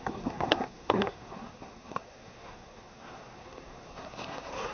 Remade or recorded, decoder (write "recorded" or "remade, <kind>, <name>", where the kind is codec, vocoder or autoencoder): remade, codec, SNAC